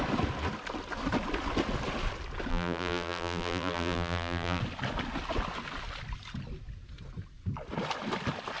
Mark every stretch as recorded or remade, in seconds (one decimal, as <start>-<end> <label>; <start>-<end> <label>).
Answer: 0.0-2.5 recorded; 2.5-4.6 remade; 4.6-8.6 recorded